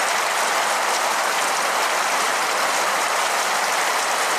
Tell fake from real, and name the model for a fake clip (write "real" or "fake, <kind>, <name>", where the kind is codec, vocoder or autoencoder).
real